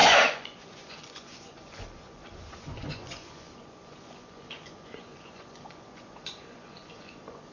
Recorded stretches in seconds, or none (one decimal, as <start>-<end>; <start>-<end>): none